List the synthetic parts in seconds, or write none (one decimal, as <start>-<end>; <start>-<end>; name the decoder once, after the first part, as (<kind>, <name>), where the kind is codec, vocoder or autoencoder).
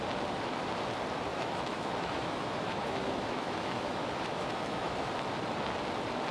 1.3-5.1 (autoencoder, DAC-VAE)